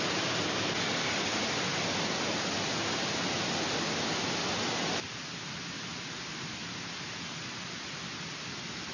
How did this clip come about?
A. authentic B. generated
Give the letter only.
A